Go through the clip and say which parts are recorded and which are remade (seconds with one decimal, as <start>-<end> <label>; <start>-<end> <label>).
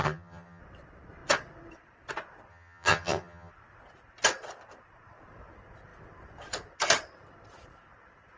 0.0-0.6 remade; 0.6-2.5 recorded; 2.5-3.5 remade; 3.5-8.4 recorded